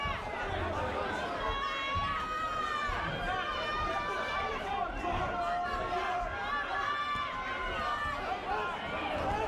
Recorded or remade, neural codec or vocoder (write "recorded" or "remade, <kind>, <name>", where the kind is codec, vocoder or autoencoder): recorded